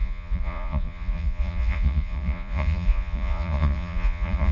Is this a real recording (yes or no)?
no